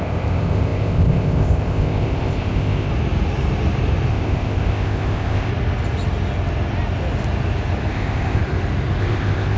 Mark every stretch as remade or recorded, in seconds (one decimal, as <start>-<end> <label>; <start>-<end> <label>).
0.0-2.9 remade; 2.9-4.1 recorded; 4.1-5.5 remade; 5.5-7.9 recorded; 7.9-8.4 remade; 8.4-9.0 recorded; 9.0-9.6 remade